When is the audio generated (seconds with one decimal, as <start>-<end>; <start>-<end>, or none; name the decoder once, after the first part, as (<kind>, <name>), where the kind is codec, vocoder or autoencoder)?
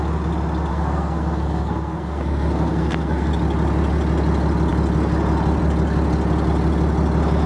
0.7-3.3 (codec, SNAC)